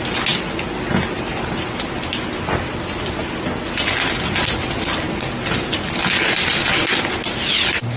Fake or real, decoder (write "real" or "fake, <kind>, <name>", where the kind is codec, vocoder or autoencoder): real